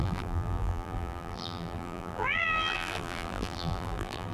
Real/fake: fake